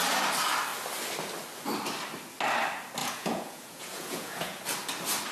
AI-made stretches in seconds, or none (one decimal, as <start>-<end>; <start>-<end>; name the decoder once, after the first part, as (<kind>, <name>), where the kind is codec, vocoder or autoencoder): 3.0-4.6 (vocoder, Vocos)